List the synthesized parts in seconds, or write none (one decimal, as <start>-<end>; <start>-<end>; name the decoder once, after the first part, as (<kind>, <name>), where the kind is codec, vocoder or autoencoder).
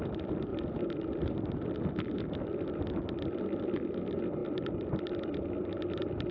0.5-1.3 (vocoder, BigVGAN v2); 4.4-5.2